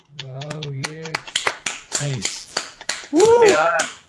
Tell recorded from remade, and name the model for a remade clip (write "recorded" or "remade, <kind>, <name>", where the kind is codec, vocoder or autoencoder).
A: remade, vocoder, BigVGAN v2